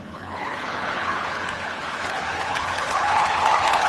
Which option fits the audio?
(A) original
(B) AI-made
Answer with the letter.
B